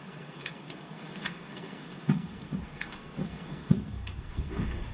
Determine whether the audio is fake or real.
fake